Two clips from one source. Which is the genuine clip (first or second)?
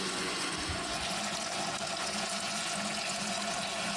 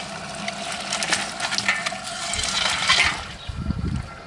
second